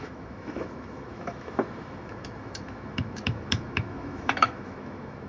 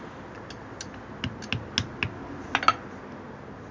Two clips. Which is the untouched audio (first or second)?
second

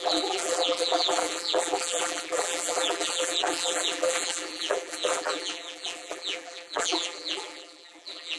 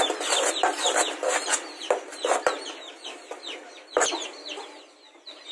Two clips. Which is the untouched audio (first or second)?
second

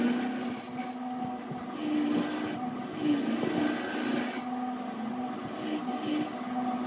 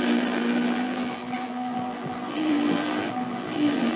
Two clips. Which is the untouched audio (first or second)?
first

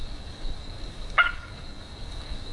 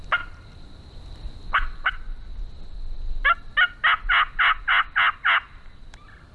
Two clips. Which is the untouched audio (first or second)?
second